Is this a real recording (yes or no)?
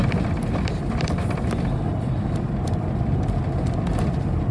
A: yes